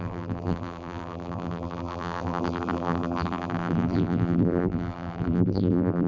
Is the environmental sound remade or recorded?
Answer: remade